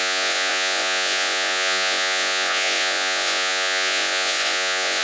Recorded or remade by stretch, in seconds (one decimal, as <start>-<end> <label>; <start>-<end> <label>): 0.0-5.0 remade